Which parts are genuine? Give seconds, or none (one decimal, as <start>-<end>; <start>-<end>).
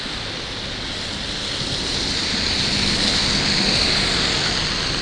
0.0-5.0